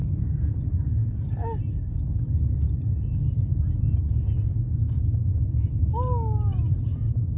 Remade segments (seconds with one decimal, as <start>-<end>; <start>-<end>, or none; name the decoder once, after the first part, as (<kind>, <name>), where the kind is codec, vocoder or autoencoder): none